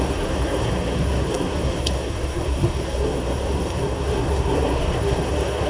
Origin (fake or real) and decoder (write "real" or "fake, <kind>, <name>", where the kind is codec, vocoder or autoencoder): fake, codec, SNAC